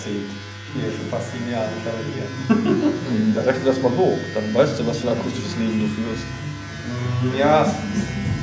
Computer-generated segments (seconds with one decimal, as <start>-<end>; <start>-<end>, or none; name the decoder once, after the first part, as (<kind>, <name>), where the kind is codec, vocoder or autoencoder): 2.7-3.4 (vocoder, Vocos)